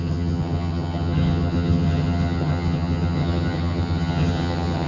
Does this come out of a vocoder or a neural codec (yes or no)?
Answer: yes